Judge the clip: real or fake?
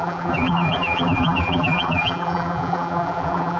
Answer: fake